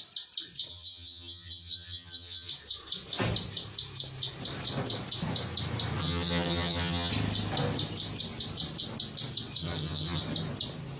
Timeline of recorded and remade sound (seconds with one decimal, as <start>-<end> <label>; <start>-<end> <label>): 0.0-0.7 recorded; 0.7-2.5 remade; 2.5-6.0 recorded; 6.0-7.1 remade; 7.1-9.6 recorded; 9.6-10.2 remade; 10.2-11.0 recorded